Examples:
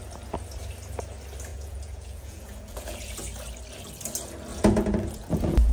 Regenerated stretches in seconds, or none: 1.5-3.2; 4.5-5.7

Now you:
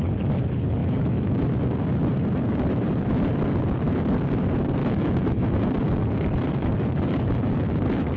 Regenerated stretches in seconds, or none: 0.8-1.4; 4.8-5.7

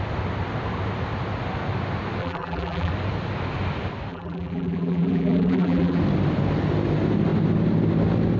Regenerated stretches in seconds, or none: 2.2-2.9; 4.1-6.0

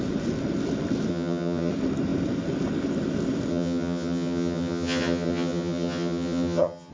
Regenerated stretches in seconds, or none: 1.1-1.7; 3.5-6.9

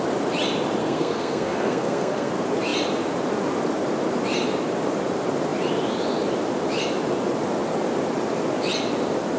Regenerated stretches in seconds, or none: 0.8-2.3

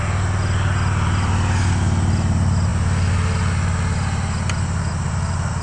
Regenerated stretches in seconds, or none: none